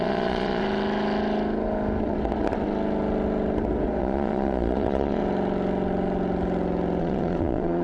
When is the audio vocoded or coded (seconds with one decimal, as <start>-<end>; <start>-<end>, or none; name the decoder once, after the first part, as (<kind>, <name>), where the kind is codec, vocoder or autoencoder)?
0.0-0.6 (vocoder, Vocos); 4.0-5.2; 7.0-7.8